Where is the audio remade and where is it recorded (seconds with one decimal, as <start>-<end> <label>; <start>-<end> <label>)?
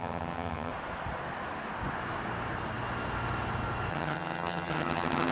0.0-0.7 remade; 0.7-3.9 recorded; 3.9-5.3 remade